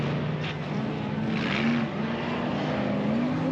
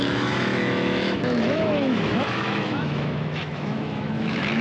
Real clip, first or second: first